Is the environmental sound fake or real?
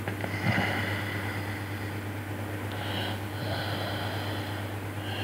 real